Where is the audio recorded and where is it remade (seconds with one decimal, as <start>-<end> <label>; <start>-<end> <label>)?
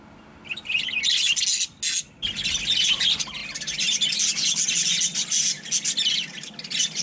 0.0-7.0 recorded